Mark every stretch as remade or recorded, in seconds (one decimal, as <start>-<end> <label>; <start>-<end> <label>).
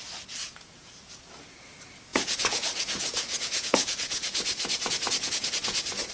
0.0-0.4 recorded; 0.4-1.7 remade; 1.7-2.1 recorded; 2.1-6.1 remade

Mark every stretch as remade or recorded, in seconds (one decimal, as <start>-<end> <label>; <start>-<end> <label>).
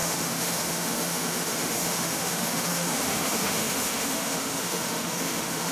0.0-5.7 remade